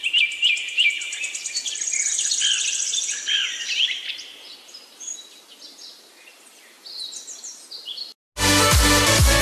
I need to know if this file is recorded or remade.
recorded